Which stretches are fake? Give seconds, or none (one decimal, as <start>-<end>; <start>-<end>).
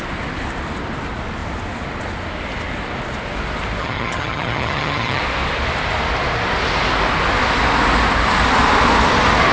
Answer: 3.8-5.2